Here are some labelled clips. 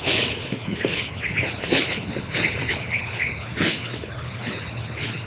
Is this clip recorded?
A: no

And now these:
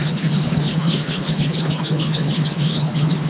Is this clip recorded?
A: no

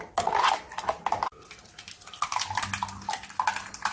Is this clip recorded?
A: yes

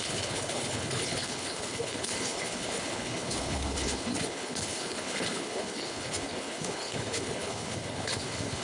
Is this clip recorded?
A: no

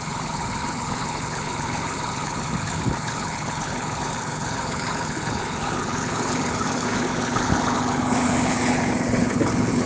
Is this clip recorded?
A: no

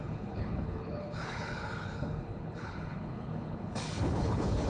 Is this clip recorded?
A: no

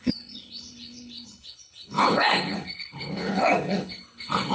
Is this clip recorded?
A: no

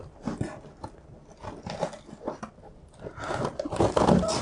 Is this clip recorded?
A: yes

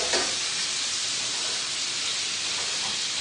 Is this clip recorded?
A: yes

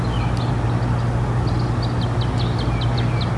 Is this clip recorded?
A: yes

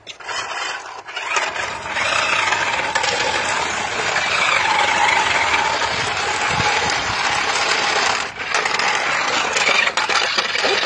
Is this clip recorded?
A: yes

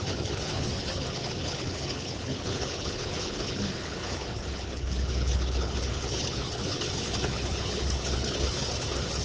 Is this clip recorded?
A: no